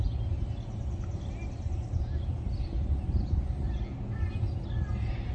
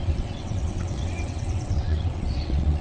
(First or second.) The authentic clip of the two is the first